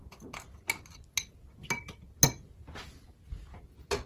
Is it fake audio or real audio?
real